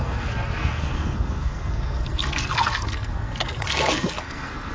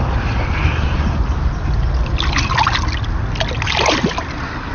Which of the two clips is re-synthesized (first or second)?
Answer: first